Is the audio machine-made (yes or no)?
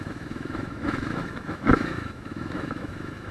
yes